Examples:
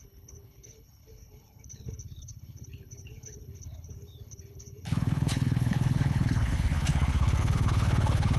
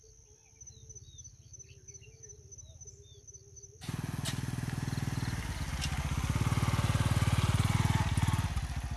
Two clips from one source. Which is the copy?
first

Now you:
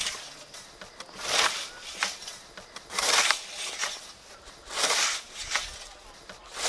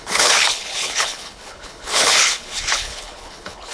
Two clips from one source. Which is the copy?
second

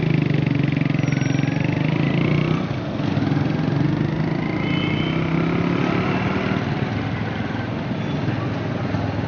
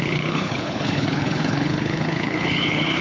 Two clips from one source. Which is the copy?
second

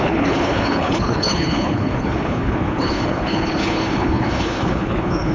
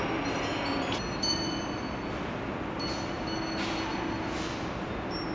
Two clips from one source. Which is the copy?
first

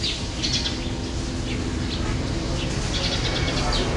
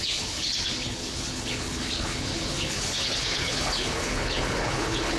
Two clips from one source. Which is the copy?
second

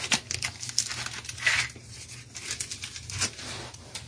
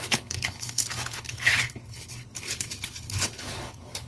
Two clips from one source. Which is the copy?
second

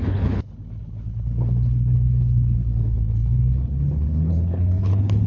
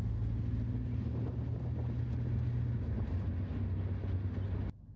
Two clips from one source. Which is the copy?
first